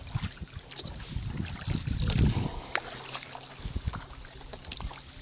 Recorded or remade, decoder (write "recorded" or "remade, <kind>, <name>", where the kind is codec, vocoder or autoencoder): recorded